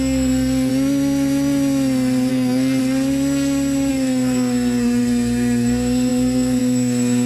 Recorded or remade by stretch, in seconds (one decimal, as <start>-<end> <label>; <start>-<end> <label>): 0.0-0.7 remade; 0.7-2.3 recorded; 2.3-2.8 remade; 2.8-3.9 recorded; 3.9-7.3 remade